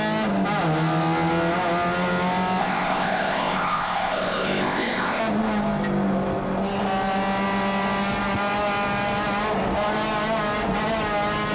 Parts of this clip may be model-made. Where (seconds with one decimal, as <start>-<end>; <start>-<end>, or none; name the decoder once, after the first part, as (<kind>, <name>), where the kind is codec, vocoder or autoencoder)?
2.6-5.2 (codec, ZipCodec)